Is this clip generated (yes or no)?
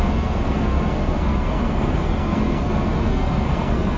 yes